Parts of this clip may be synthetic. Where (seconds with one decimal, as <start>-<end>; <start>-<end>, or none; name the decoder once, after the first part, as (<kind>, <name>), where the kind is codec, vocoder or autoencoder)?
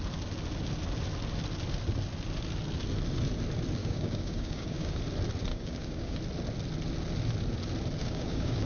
3.8-5.0 (codec, DAC); 5.5-6.2; 8.0-8.7